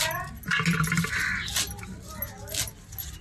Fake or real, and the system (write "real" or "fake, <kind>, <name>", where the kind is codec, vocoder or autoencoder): real